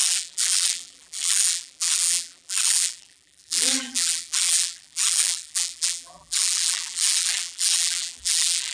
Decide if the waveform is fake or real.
fake